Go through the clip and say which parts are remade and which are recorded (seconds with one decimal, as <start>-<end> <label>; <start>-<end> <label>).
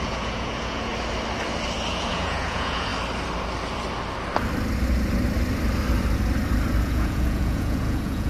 0.0-0.9 remade; 0.9-1.9 recorded; 1.9-2.9 remade; 2.9-6.8 recorded; 6.8-8.3 remade